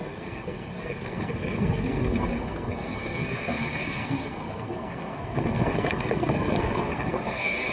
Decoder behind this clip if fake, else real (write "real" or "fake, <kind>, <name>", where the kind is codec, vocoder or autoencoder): fake, codec, SNAC